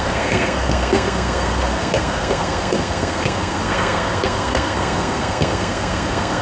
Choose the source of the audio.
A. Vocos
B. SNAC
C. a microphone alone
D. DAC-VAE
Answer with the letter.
B